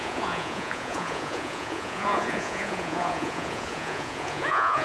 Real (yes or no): no